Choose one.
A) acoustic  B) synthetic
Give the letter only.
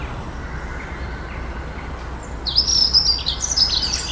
A